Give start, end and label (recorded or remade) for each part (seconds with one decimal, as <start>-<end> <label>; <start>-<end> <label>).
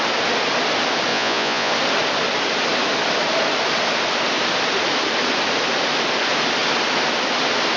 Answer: 0.0-1.1 recorded; 1.1-1.7 remade; 1.7-7.8 recorded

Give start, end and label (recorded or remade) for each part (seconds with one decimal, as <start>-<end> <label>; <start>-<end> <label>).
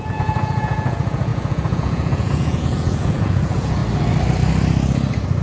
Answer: 0.0-3.8 remade; 3.8-5.4 recorded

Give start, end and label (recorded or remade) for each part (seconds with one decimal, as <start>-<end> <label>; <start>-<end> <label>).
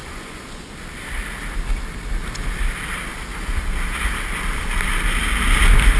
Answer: 0.0-0.7 remade; 0.7-6.0 recorded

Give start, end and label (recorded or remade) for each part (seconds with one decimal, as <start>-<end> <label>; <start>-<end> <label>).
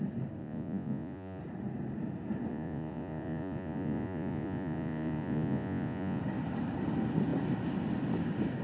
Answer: 0.0-0.4 recorded; 0.4-1.4 remade; 1.4-2.5 recorded; 2.5-6.2 remade; 6.2-8.6 recorded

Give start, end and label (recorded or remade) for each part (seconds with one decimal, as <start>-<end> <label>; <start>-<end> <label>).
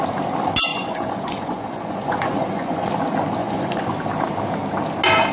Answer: 0.0-0.7 recorded; 0.7-2.9 remade; 2.9-3.4 recorded; 3.4-3.9 remade; 3.9-5.3 recorded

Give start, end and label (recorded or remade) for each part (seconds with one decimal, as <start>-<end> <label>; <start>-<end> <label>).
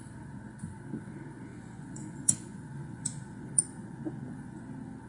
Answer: 0.0-1.5 recorded; 1.5-4.6 remade; 4.6-5.1 recorded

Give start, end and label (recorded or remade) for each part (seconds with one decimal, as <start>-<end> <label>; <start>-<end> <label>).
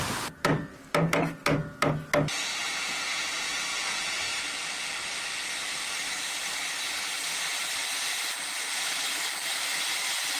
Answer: 0.0-2.6 recorded; 2.6-4.2 remade; 4.2-10.4 recorded